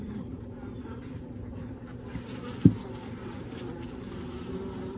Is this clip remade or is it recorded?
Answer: recorded